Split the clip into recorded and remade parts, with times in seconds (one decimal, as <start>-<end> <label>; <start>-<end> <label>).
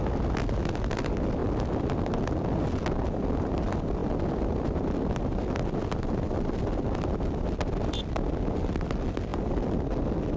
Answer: 0.0-10.4 recorded